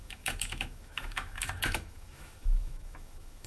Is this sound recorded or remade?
remade